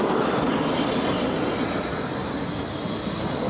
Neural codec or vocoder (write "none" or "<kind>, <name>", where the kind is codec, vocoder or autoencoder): none